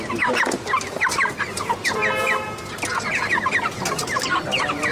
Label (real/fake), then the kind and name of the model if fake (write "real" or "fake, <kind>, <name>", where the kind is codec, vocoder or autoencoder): real